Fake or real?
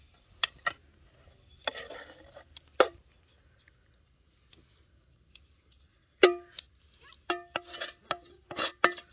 real